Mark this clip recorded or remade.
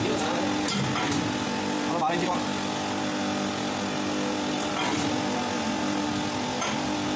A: recorded